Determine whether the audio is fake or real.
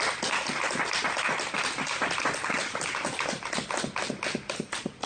real